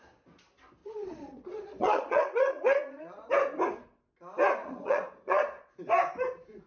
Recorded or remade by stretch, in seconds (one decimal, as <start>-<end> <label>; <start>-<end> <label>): 0.0-0.8 recorded; 0.8-3.3 remade; 3.3-4.6 recorded; 4.6-5.7 remade; 5.7-6.7 recorded